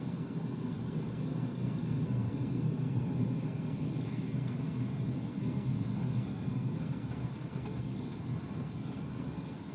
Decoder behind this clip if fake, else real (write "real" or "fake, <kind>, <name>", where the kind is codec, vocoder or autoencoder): fake, codec, SNAC